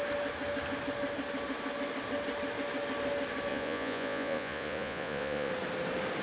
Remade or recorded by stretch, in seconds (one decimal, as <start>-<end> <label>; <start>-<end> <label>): 0.0-3.5 recorded; 3.5-5.5 remade; 5.5-6.2 recorded